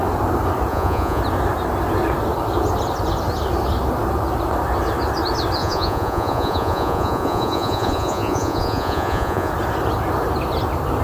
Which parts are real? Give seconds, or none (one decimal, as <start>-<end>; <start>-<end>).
0.0-0.7; 1.2-5.6; 9.5-11.0